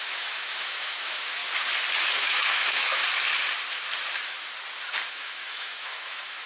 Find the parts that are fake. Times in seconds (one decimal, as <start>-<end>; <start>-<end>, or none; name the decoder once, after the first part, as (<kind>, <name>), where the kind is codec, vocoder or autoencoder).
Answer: 0.0-1.4 (autoencoder, DAC-VAE); 2.1-3.0; 5.1-6.5